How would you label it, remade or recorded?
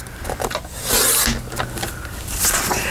recorded